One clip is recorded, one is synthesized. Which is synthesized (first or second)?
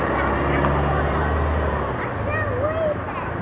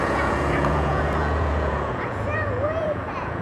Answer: second